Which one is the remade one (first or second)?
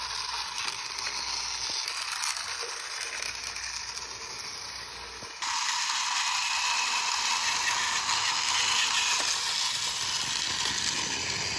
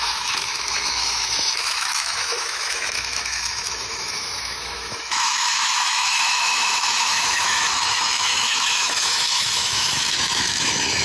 second